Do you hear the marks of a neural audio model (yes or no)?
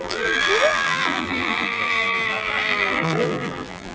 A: yes